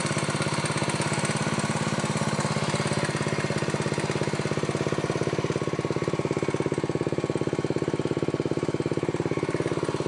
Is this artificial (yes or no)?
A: no